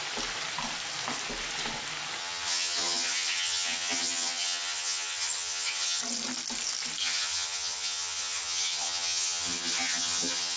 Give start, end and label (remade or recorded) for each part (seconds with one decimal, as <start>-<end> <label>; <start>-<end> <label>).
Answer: 0.0-2.2 recorded; 2.2-6.0 remade; 6.0-7.0 recorded; 7.0-10.6 remade